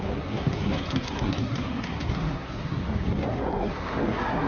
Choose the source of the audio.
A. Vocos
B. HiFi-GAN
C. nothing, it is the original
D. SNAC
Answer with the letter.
D